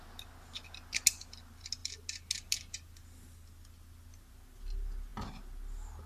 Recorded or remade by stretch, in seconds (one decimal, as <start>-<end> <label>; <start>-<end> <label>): 0.0-6.1 recorded